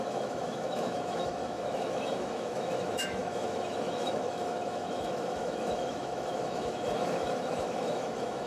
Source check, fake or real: fake